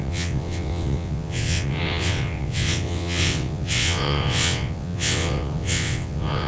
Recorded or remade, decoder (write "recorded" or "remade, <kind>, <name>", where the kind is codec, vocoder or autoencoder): remade, vocoder, WaveNeXt